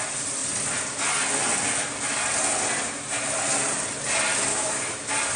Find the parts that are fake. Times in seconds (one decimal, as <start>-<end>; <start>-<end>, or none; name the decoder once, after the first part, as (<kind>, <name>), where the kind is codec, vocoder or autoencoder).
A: 4.5-5.0 (autoencoder, DAC-VAE)